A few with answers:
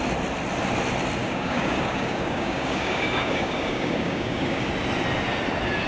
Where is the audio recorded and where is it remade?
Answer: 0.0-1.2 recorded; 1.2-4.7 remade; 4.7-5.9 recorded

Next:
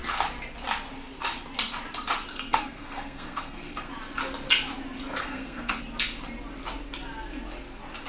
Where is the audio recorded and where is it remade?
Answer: 0.0-2.3 recorded; 2.3-3.9 remade; 3.9-5.2 recorded; 5.2-5.8 remade; 5.8-8.1 recorded

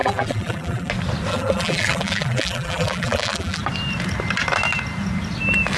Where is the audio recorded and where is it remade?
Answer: 0.0-0.9 remade; 0.9-1.3 recorded; 1.3-3.6 remade; 3.6-5.8 recorded